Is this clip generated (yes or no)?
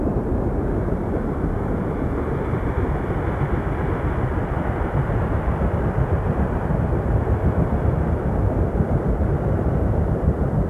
no